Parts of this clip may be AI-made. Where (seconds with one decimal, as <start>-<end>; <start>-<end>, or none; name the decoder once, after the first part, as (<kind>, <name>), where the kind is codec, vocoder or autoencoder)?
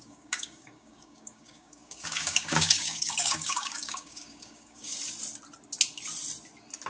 0.0-4.9 (codec, DAC)